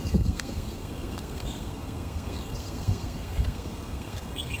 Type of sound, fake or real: fake